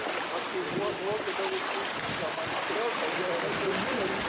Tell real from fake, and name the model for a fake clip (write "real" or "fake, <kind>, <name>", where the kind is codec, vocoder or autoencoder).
real